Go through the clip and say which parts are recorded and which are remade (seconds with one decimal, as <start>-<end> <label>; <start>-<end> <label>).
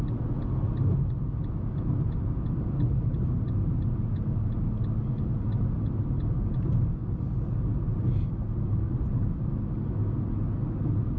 0.0-7.0 recorded; 7.0-7.5 remade; 7.5-11.2 recorded